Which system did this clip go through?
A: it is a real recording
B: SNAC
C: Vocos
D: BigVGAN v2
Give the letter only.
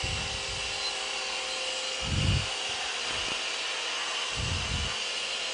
A